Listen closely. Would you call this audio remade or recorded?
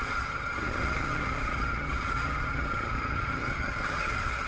remade